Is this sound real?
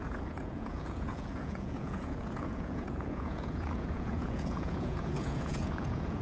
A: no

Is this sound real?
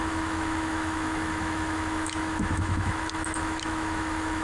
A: no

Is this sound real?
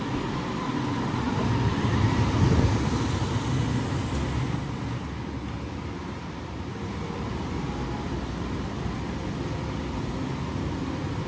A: yes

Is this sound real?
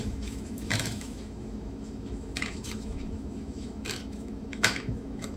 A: no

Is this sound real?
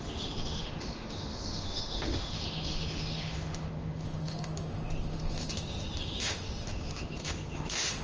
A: no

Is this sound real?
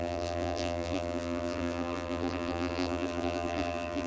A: no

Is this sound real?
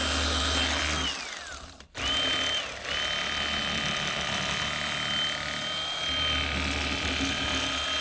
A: yes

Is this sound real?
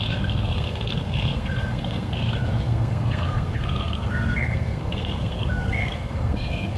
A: no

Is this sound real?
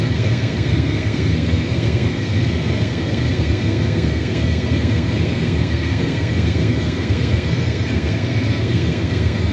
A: no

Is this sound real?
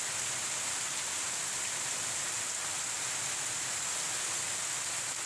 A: yes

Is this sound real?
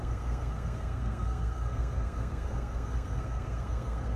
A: no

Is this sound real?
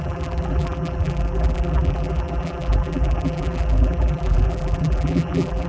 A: no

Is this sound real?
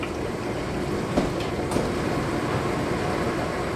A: no